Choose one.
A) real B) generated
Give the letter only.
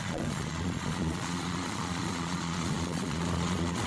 B